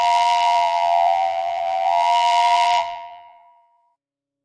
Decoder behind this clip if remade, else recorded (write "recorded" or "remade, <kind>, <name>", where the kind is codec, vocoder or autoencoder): remade, vocoder, BigVGAN v2